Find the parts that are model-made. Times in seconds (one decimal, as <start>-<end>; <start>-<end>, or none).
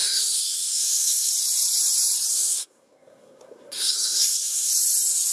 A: 0.0-1.3; 2.3-4.7